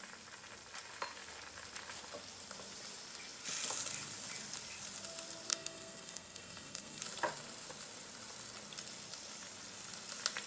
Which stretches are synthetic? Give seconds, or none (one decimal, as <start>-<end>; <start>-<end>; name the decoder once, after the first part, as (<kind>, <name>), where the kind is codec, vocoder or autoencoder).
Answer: 5.5-7.0 (codec, SNAC)